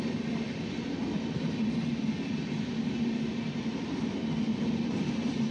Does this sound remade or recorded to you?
recorded